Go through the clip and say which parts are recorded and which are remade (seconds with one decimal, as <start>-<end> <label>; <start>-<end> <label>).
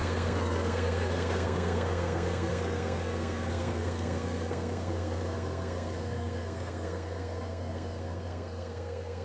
0.0-9.2 remade